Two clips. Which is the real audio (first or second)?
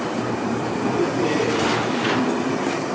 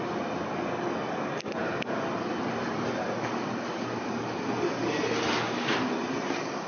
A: second